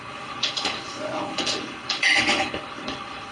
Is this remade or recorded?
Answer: remade